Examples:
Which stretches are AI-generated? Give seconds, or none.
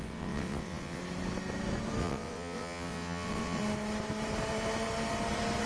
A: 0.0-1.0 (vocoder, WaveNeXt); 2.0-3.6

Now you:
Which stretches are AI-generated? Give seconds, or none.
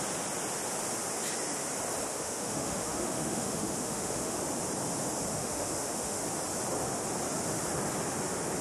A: 2.1-4.4 (autoencoder, DAC-VAE); 5.3-6.2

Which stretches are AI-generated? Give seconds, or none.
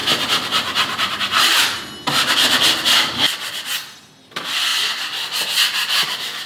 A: none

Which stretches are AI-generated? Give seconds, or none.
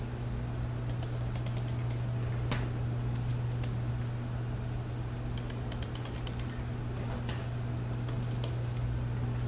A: none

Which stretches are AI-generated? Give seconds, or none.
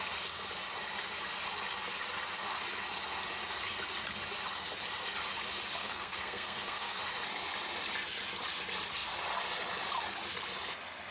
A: 5.8-7.0 (codec, SNAC)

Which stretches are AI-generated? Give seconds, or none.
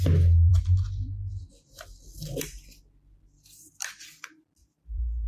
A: 4.6-5.3 (vocoder, BigVGAN v2)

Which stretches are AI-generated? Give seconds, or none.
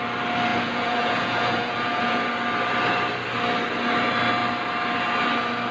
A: 0.5-2.3 (vocoder, Vocos)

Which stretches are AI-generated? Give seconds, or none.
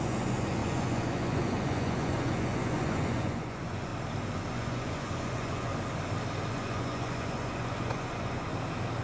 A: 0.0-3.9 (vocoder, Vocos); 4.5-5.7; 6.5-8.5